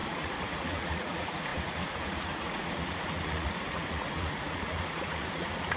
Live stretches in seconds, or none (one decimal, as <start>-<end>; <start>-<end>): none